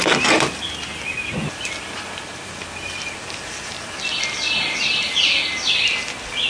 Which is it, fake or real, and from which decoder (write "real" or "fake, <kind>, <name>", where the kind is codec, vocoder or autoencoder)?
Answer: real